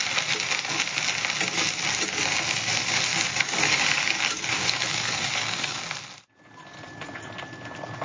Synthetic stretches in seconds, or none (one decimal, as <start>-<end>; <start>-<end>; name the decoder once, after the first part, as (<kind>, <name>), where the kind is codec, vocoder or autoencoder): 3.1-5.8 (codec, DAC)